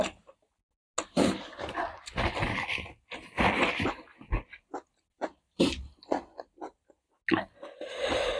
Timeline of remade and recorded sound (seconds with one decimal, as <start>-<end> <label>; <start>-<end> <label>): 0.0-8.4 recorded